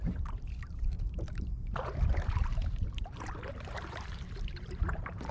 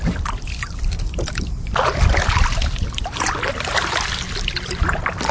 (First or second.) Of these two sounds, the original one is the second